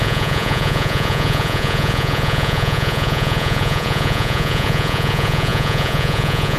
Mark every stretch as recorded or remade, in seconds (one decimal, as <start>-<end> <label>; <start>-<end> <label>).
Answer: 0.0-6.6 remade